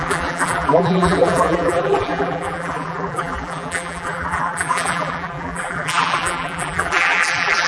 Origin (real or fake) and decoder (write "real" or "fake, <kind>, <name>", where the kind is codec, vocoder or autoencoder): fake, vocoder, BigVGAN v2